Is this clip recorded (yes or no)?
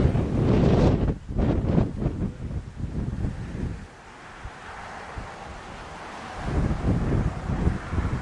yes